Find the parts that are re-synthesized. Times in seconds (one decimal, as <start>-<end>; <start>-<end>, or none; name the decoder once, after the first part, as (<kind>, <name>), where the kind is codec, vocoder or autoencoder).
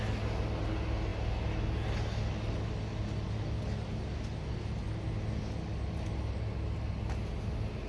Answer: none